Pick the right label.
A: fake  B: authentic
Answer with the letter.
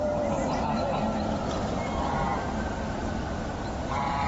A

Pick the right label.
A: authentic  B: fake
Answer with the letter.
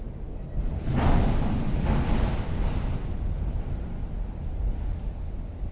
A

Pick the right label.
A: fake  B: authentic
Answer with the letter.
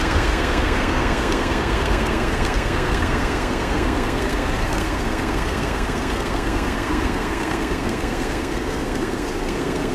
A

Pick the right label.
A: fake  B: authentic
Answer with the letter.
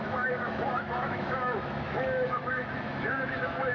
A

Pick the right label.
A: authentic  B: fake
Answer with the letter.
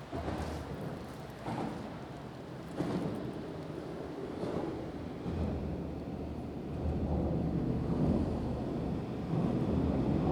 A